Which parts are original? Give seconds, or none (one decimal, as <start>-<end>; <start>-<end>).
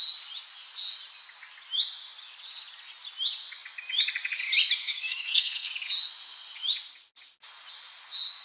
0.0-4.8; 5.7-8.4